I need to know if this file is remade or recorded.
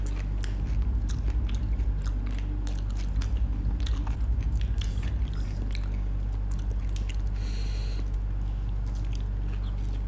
recorded